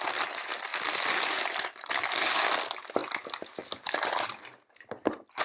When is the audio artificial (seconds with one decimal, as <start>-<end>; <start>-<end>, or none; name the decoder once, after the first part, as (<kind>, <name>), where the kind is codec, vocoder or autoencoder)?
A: none